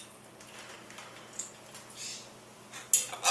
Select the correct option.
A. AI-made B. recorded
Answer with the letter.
B